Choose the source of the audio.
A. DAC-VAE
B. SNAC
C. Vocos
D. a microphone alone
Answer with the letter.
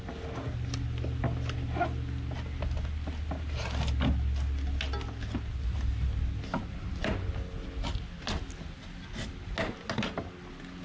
D